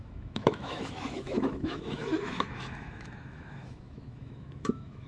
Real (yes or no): no